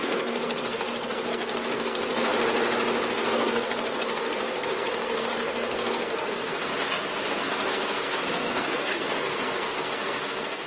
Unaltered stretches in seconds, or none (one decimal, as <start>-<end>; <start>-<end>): 2.3-3.1; 6.7-7.3